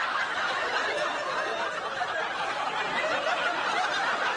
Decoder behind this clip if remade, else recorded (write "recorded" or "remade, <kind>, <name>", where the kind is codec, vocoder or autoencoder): recorded